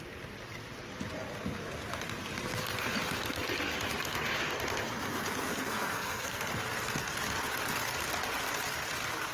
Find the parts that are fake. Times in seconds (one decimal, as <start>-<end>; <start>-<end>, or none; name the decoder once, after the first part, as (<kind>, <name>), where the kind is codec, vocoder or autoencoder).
5.5-6.5 (codec, SNAC)